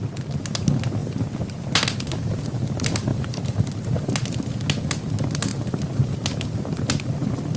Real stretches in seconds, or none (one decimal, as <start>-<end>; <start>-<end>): 0.0-3.1; 3.7-7.6